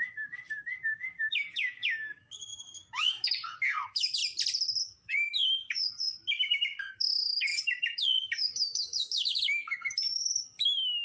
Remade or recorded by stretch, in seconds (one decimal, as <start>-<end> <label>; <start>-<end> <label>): 0.0-4.2 remade; 4.2-4.8 recorded; 4.8-11.0 remade